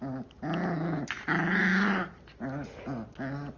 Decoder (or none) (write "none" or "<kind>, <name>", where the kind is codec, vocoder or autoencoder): none